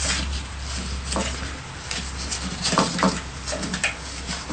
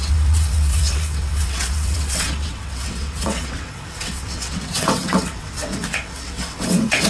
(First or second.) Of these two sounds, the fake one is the second